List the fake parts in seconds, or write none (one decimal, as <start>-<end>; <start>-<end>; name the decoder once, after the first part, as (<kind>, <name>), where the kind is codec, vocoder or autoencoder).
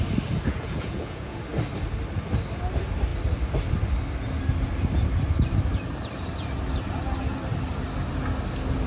0.5-1.4 (vocoder, Vocos)